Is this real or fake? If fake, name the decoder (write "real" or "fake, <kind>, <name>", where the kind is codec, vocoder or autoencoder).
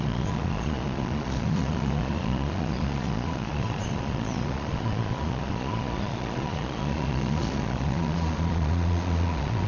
fake, vocoder, Vocos